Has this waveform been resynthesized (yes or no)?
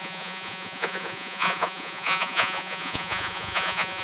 yes